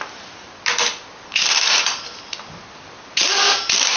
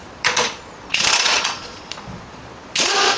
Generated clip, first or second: second